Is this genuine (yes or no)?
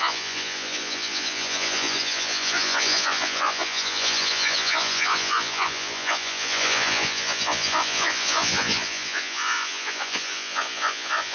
no